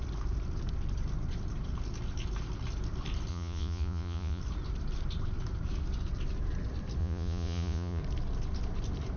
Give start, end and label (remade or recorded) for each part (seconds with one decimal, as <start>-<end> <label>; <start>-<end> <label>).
0.0-3.3 recorded; 3.3-4.4 remade; 4.4-7.0 recorded; 7.0-8.0 remade; 8.0-9.2 recorded